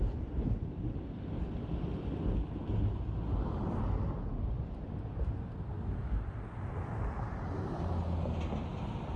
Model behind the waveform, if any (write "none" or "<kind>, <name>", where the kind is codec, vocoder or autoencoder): none